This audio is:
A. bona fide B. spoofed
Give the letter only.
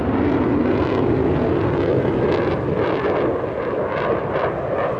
A